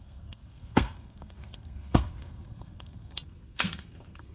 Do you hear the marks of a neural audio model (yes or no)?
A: yes